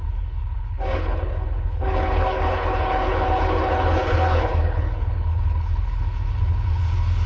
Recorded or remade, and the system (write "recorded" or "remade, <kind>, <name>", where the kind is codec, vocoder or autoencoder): remade, codec, HILCodec